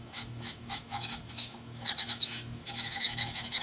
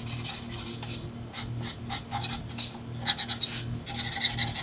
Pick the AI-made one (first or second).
first